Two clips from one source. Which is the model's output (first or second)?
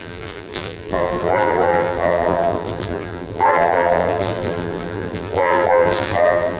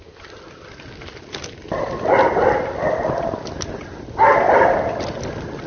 first